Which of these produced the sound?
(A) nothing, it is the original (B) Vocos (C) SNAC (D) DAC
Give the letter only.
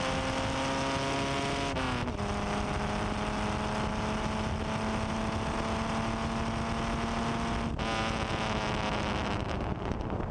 A